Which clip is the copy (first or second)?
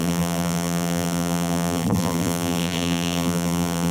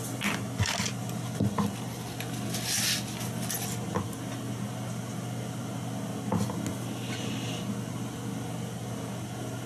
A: first